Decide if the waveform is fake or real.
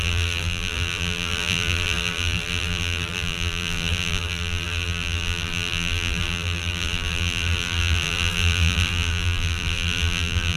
fake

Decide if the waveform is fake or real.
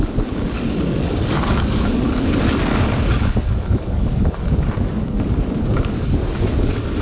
fake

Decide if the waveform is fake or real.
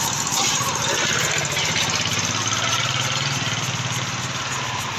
real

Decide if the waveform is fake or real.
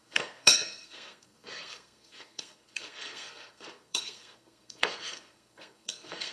fake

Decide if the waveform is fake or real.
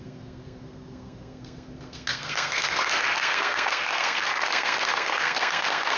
fake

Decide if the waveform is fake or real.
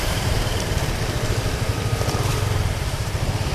fake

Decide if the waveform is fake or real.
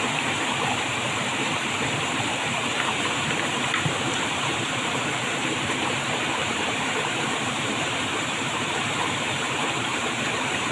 fake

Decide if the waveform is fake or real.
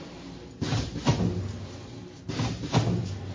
real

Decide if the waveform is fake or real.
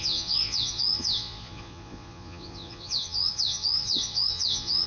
fake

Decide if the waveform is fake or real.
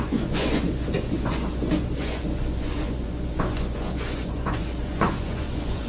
fake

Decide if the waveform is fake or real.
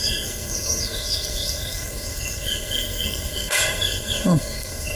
fake